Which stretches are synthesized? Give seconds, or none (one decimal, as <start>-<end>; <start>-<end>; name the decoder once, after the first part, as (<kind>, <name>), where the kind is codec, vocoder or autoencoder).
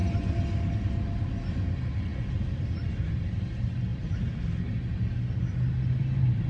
none